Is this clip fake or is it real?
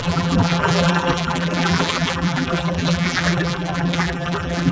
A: fake